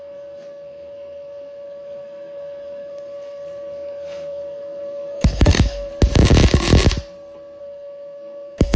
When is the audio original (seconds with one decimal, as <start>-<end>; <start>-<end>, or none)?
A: 5.9-7.6